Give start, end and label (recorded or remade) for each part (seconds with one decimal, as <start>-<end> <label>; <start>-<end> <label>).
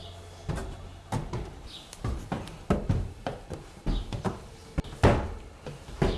0.0-6.2 recorded